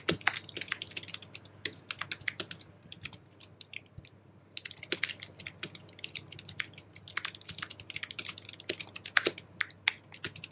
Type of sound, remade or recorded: recorded